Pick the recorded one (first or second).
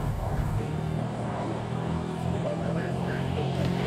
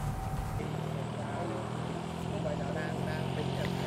second